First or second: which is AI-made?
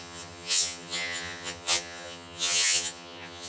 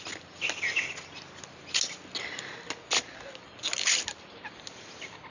first